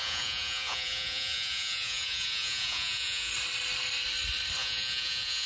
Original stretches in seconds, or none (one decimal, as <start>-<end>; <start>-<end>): 3.3-4.6